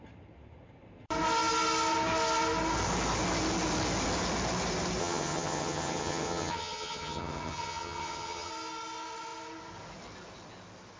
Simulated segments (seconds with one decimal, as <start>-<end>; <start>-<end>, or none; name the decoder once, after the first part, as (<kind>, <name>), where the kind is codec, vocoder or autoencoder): 5.0-8.5 (vocoder, HiFi-GAN)